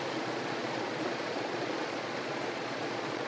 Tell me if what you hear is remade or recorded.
remade